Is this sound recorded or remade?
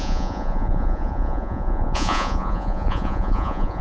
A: remade